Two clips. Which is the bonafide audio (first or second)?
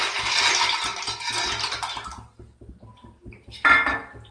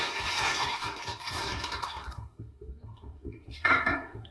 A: first